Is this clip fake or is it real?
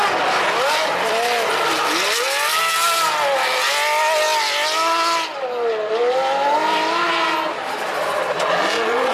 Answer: real